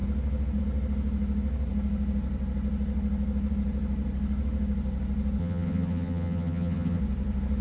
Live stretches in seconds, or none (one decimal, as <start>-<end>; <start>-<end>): 0.0-5.4; 7.0-7.6